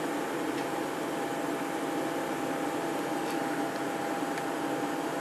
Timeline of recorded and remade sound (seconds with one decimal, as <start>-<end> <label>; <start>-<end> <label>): 0.0-5.2 recorded